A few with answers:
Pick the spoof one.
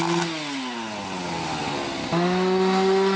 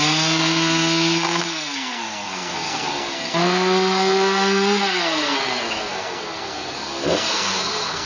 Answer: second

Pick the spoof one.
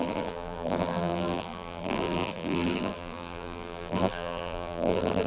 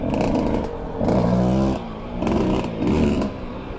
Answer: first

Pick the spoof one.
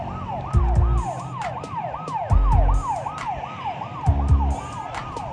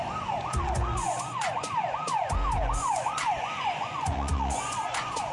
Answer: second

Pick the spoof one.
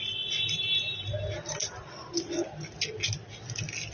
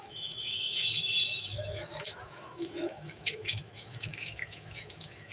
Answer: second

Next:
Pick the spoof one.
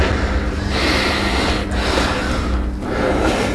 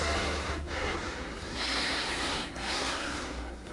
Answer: second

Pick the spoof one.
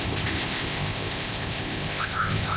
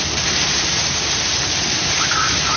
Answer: first